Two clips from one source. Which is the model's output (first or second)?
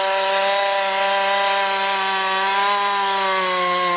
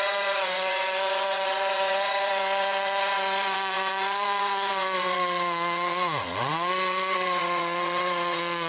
second